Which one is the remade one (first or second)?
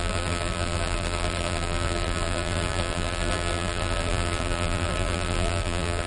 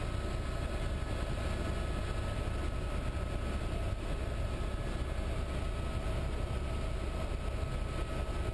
first